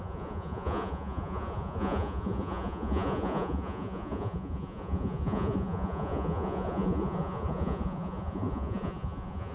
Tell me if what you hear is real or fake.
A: fake